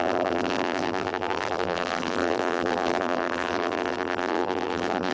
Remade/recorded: remade